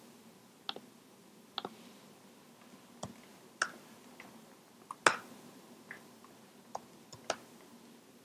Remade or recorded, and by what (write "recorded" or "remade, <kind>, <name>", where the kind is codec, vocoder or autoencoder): recorded